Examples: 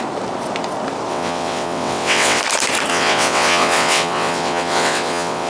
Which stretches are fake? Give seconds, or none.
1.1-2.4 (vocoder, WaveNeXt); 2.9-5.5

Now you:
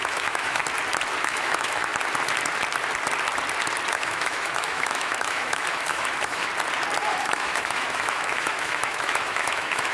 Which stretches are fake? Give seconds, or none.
0.0-0.6 (autoencoder, DAC-VAE); 1.2-1.9; 3.9-6.5; 7.2-9.9

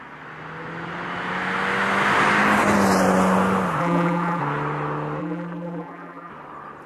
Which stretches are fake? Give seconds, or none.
3.8-4.4 (vocoder, BigVGAN v2); 5.2-6.3